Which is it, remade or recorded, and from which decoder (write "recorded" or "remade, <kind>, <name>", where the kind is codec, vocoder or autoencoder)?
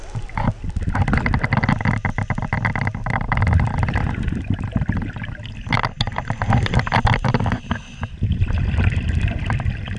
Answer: recorded